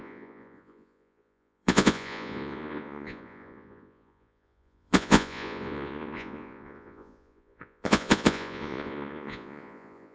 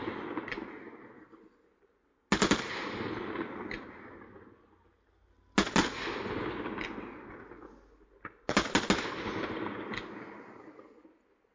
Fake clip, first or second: first